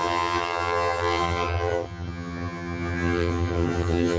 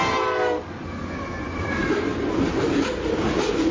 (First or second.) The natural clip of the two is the second